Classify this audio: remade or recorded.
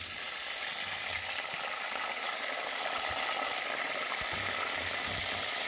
recorded